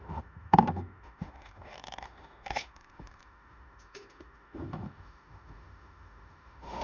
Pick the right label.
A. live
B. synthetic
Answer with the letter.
B